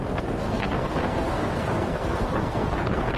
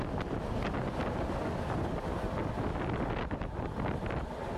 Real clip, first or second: second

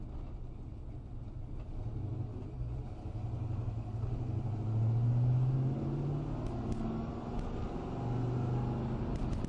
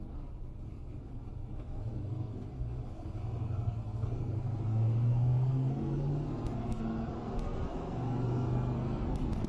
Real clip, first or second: first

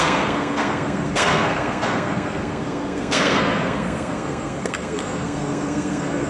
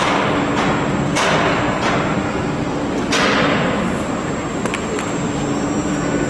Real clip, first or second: second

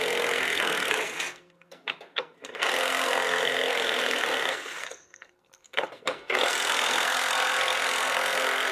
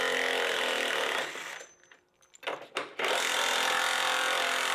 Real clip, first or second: second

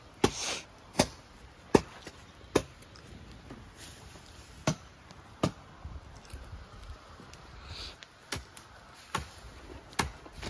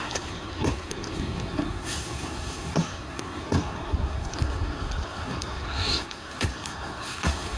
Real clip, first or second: first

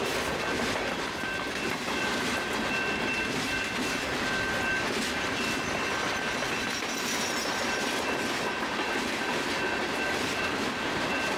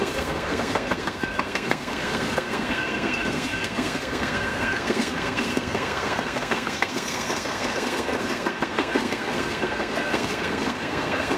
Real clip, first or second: first